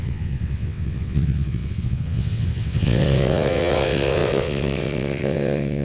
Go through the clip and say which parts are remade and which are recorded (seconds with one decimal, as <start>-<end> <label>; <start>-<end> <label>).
0.0-5.8 remade